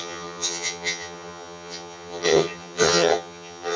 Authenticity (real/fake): fake